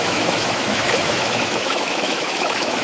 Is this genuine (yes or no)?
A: no